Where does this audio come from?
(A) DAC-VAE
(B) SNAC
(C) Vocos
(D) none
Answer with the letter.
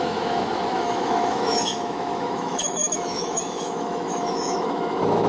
A